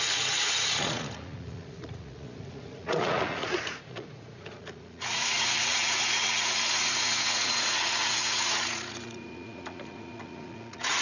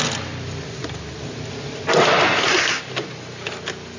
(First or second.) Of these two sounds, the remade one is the first